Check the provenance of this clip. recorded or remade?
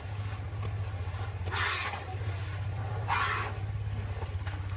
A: recorded